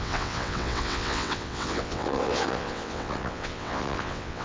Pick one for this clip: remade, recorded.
remade